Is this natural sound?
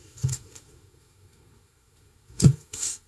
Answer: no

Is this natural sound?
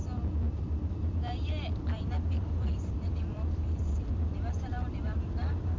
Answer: no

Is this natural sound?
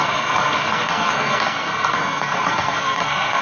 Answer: no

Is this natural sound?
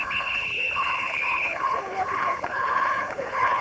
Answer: no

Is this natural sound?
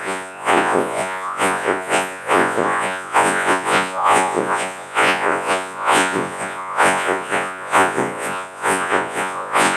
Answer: no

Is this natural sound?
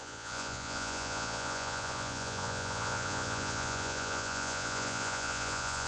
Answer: no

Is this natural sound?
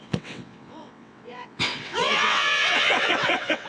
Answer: no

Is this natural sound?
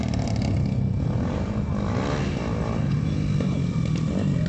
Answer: yes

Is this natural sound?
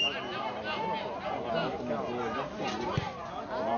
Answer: yes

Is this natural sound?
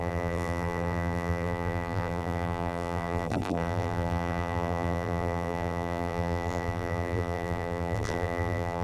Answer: no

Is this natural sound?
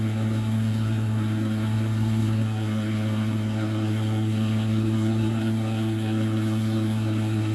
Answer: no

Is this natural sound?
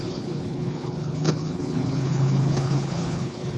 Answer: no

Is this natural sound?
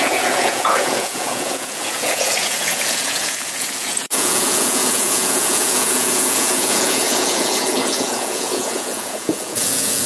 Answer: no